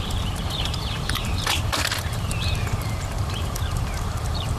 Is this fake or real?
fake